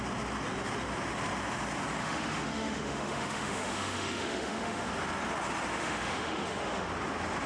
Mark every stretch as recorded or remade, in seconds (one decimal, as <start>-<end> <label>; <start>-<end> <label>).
0.0-2.0 recorded; 2.0-4.9 remade; 4.9-5.7 recorded; 5.7-6.9 remade; 6.9-7.5 recorded